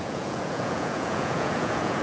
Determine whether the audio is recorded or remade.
remade